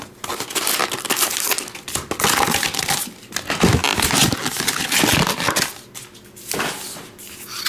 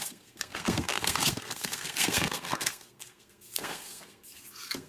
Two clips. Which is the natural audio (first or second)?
first